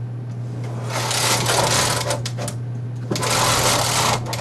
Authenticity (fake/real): real